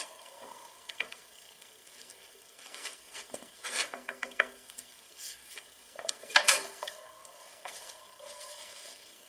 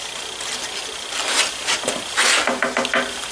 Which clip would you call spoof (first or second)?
first